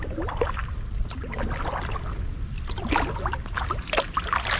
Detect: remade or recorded recorded